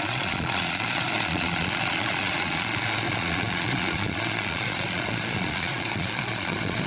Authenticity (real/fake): fake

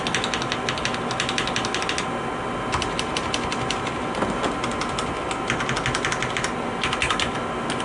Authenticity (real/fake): real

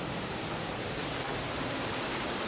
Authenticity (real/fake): real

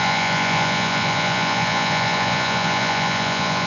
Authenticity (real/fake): fake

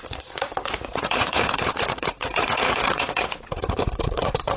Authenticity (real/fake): fake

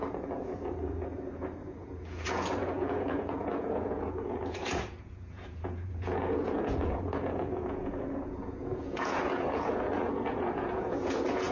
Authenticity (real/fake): fake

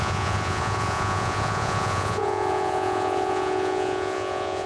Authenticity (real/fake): fake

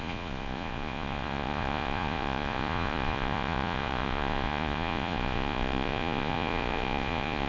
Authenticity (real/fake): fake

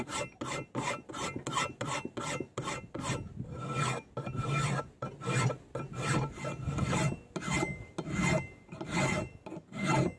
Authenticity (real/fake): real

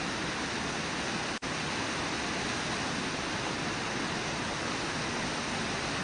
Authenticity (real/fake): real